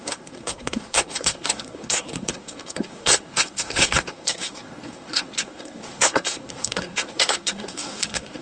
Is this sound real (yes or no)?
no